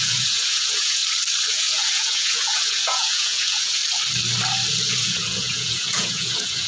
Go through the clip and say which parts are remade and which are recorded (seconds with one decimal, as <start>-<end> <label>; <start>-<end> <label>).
0.0-1.0 remade; 1.0-1.5 recorded; 1.5-3.8 remade; 3.8-4.7 recorded; 4.7-6.7 remade